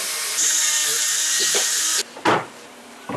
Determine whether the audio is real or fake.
fake